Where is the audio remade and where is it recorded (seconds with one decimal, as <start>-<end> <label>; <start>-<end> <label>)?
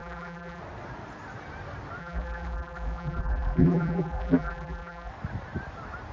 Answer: 0.0-0.6 remade; 0.6-2.0 recorded; 2.0-5.1 remade; 5.1-6.1 recorded